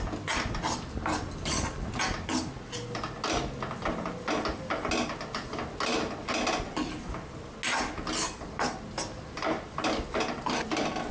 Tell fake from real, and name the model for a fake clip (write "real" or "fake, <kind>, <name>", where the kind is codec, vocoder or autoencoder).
real